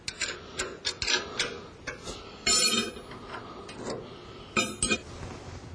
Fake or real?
real